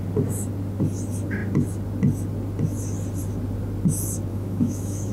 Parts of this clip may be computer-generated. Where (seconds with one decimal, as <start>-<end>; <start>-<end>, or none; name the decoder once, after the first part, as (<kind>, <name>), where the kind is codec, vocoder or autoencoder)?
4.3-5.1 (autoencoder, DAC-VAE)